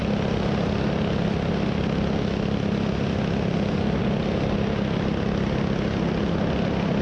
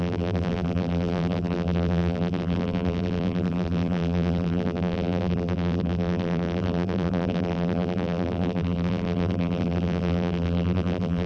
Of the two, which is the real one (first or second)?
first